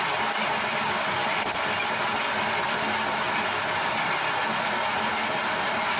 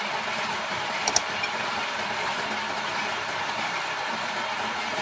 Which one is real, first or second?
first